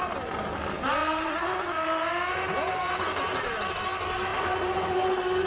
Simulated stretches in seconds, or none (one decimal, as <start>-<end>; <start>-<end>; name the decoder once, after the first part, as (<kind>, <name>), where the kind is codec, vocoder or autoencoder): none